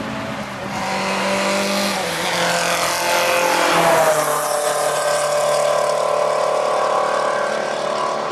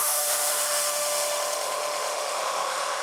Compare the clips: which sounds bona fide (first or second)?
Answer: first